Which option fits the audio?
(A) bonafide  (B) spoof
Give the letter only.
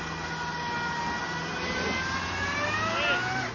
A